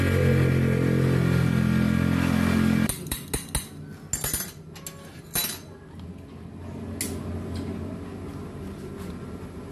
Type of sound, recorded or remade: recorded